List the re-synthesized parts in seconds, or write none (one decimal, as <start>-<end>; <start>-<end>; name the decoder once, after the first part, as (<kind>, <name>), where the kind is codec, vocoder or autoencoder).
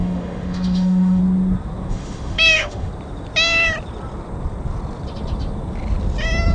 0.0-1.2 (autoencoder, DAC-VAE); 1.9-2.9